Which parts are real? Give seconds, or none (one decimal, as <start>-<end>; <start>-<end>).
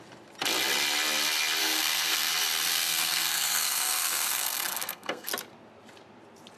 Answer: 0.0-1.6; 2.3-2.7; 5.3-6.6